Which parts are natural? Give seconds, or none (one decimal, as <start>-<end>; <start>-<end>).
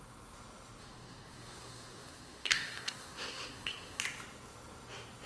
0.0-0.8; 4.0-5.3